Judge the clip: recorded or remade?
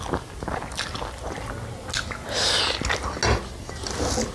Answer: recorded